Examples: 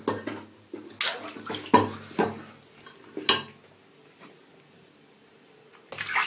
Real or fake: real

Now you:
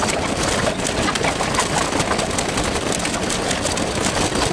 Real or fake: real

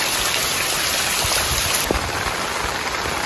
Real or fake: fake